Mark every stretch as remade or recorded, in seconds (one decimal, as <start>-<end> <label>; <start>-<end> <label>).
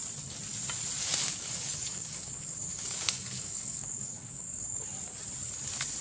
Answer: 0.0-1.2 recorded; 1.2-4.8 remade; 4.8-6.0 recorded